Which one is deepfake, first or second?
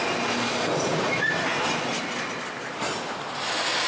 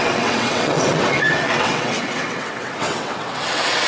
second